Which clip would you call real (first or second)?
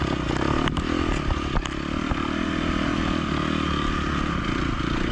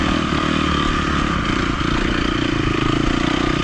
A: first